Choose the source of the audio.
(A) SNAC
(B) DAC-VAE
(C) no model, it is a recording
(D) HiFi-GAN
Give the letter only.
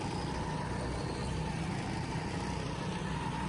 C